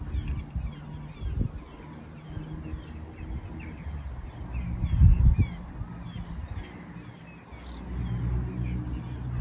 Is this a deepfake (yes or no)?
no